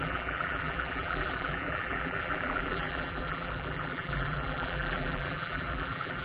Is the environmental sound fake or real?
fake